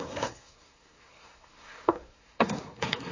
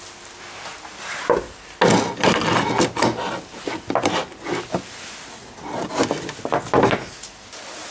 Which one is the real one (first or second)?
second